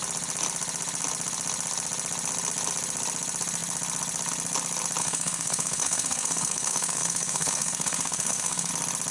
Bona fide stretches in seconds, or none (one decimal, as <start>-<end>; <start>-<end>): 0.0-5.0; 8.7-9.1